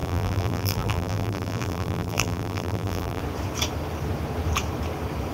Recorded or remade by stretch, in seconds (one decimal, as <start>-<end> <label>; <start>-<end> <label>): 0.0-3.2 remade; 3.2-5.3 recorded

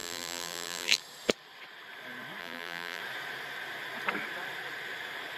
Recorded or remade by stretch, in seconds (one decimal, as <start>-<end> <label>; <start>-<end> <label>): 0.0-1.0 remade; 1.0-2.4 recorded; 2.4-3.0 remade; 3.0-5.4 recorded

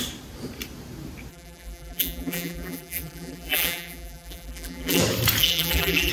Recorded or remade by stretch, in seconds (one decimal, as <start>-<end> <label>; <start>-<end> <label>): 0.0-1.3 recorded; 1.3-5.0 remade; 5.0-5.4 recorded; 5.4-6.1 remade

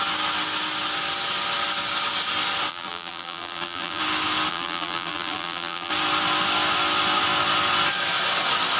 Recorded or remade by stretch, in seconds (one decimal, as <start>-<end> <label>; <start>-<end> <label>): 0.0-2.7 recorded; 2.7-4.0 remade; 4.0-4.5 recorded; 4.5-5.9 remade; 5.9-8.8 recorded

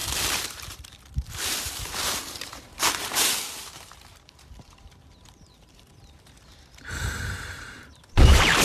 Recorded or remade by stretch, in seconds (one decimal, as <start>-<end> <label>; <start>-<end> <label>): 0.0-8.6 remade

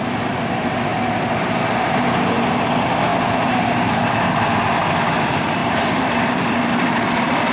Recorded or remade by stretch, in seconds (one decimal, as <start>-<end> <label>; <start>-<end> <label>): 0.0-0.9 recorded; 0.9-2.6 remade; 2.6-3.1 recorded; 3.1-4.3 remade; 4.3-5.6 recorded; 5.6-6.1 remade; 6.1-7.5 recorded

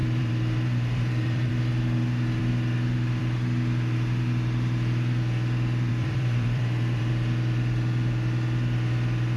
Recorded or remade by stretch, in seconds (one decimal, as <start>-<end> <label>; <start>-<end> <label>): 0.0-1.5 remade; 1.5-5.9 recorded; 5.9-7.1 remade; 7.1-9.4 recorded